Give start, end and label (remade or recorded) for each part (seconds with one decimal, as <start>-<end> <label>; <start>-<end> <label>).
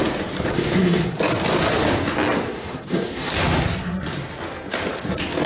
0.0-0.5 recorded; 0.5-1.2 remade; 1.2-2.5 recorded; 2.5-3.3 remade; 3.3-5.5 recorded